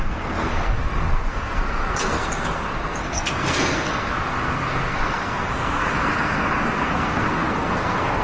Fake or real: fake